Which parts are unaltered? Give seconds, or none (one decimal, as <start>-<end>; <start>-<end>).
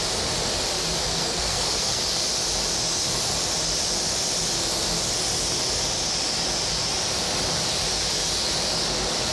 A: 0.0-1.0; 2.0-9.3